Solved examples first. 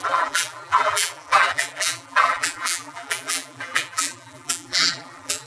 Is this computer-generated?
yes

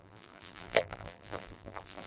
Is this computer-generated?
yes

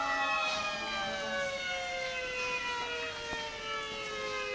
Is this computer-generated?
no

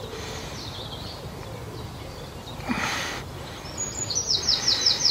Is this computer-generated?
no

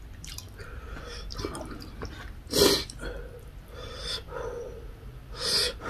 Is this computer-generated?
no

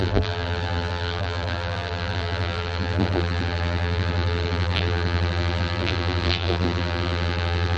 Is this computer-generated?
yes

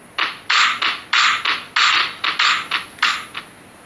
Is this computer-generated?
no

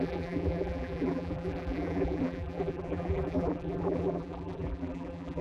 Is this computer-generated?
yes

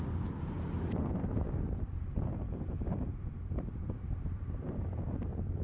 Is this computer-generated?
yes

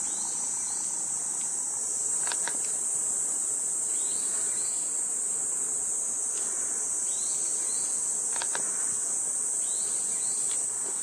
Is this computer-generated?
no